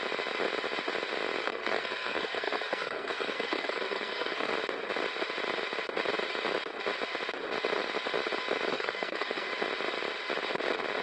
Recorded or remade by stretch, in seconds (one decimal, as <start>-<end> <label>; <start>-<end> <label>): 0.0-1.4 recorded; 1.4-4.5 remade; 4.5-8.7 recorded; 8.7-9.5 remade; 9.5-11.0 recorded